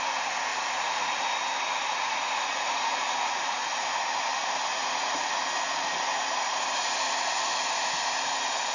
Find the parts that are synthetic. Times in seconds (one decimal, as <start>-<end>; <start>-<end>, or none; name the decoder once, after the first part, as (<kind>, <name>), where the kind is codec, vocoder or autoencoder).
0.5-1.2 (vocoder, Vocos); 1.9-3.7; 4.7-5.4